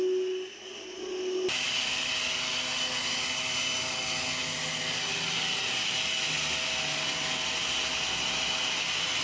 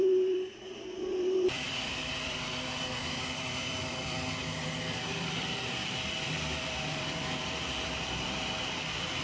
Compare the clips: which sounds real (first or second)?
first